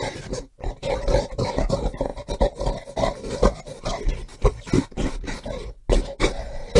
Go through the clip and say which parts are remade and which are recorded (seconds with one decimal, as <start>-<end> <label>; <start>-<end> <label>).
0.0-6.8 recorded